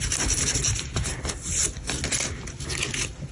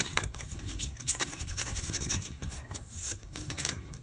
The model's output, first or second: second